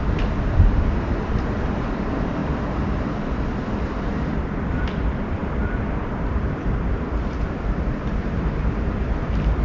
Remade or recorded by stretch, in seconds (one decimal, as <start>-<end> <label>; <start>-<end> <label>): 0.0-2.4 remade; 2.4-4.0 recorded; 4.0-9.6 remade